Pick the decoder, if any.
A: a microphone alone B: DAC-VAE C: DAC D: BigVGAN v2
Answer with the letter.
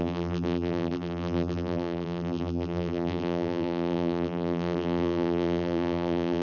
D